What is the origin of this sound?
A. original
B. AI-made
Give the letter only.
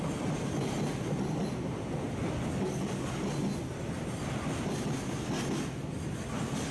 A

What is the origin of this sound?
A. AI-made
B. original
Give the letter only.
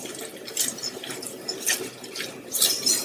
A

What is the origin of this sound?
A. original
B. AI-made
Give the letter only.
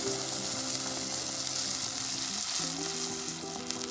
A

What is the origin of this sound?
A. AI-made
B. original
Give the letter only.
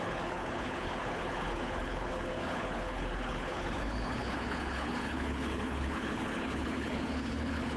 A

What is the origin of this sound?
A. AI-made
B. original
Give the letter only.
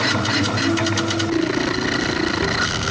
B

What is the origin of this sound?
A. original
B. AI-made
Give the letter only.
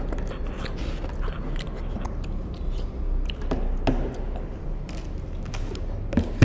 A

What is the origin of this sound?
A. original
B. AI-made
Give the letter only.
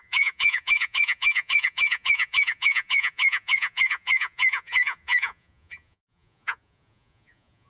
B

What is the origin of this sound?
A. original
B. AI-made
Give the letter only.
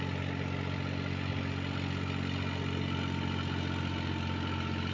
A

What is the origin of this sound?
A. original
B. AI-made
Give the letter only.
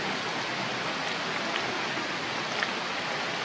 A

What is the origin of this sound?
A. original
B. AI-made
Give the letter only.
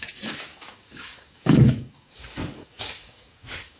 B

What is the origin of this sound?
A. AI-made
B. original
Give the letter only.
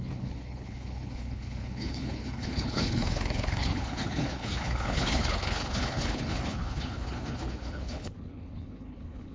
A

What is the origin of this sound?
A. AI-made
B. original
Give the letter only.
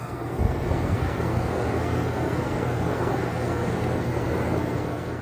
A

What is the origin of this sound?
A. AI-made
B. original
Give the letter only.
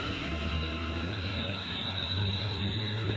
A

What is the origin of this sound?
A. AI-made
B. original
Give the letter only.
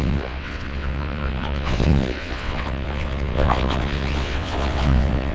A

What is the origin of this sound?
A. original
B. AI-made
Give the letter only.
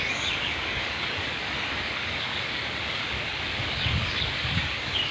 B